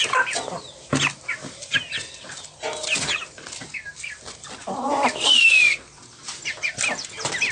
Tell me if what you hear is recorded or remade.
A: recorded